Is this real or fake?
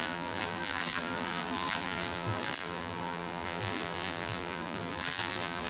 fake